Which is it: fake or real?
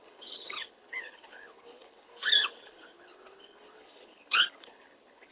fake